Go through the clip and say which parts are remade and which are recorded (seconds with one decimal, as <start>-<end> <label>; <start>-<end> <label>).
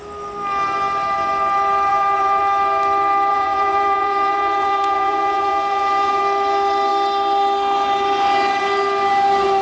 0.0-1.9 recorded; 1.9-2.4 remade; 2.4-3.3 recorded; 3.3-6.2 remade; 6.2-9.6 recorded